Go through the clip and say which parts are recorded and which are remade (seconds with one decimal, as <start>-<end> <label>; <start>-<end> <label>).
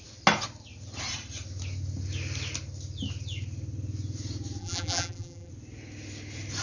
0.0-4.6 recorded; 4.6-5.5 remade; 5.5-6.6 recorded